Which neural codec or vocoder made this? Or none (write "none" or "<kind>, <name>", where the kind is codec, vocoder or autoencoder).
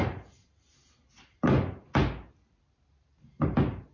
none